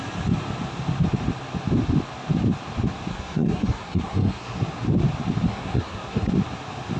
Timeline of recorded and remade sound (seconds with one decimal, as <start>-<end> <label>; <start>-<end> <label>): 0.0-3.1 recorded; 3.1-4.7 remade; 4.7-5.5 recorded; 5.5-6.3 remade; 6.3-7.0 recorded